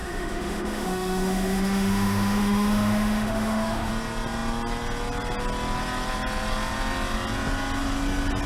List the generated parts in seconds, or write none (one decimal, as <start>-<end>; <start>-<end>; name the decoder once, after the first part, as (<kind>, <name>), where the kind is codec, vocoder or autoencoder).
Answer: 0.0-3.9 (autoencoder, DAC-VAE)